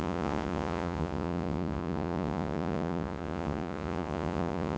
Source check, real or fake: fake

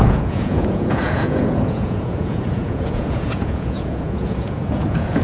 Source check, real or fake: fake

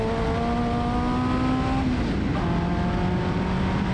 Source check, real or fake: real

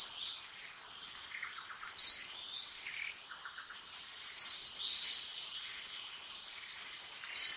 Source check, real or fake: real